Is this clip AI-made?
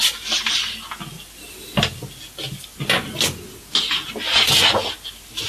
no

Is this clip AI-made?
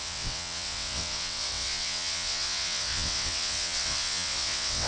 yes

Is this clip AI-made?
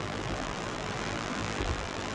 yes